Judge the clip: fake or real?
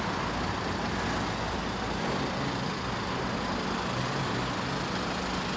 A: real